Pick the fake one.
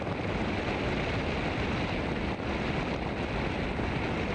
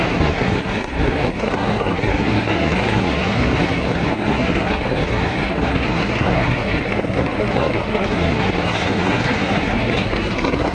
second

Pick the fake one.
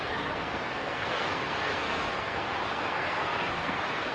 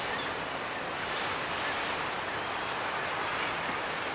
first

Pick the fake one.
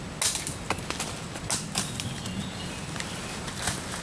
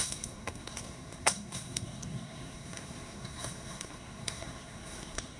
second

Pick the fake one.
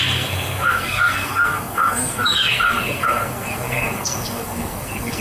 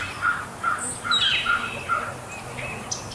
first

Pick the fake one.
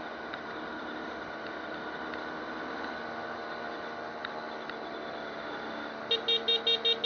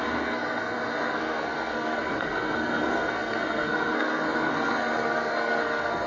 second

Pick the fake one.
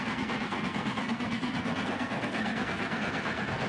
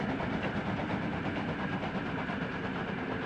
first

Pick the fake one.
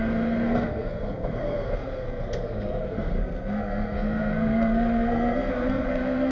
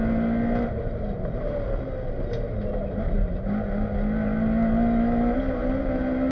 first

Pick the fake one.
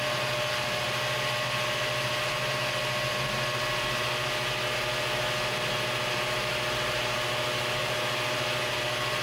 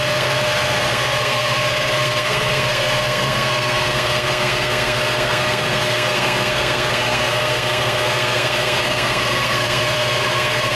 second